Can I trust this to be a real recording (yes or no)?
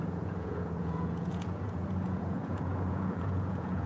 no